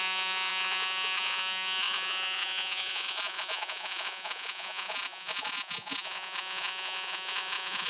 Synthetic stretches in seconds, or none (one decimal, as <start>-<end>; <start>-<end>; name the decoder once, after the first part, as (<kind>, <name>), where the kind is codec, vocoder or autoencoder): 0.0-7.9 (vocoder, Vocos)